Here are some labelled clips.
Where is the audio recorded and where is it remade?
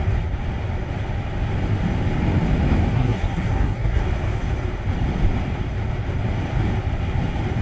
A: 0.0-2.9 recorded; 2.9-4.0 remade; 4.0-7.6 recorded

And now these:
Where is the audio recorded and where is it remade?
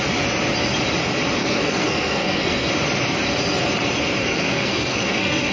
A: 0.0-1.4 recorded; 1.4-2.7 remade; 2.7-4.2 recorded; 4.2-5.5 remade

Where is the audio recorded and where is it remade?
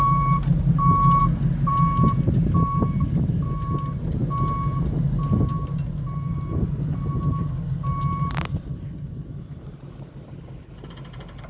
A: 0.0-11.5 recorded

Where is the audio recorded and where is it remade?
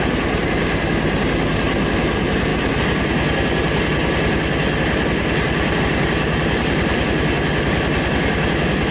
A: 0.0-8.9 recorded